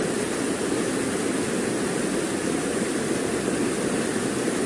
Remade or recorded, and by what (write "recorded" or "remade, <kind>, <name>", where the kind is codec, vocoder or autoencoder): recorded